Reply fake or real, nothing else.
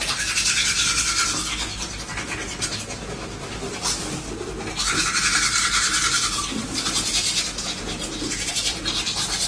real